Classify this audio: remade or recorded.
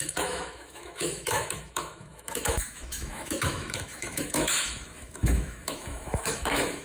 remade